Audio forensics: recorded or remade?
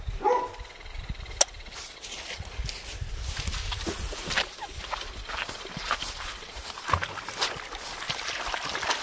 recorded